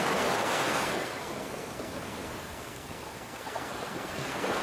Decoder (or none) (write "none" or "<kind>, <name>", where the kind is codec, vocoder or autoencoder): codec, SNAC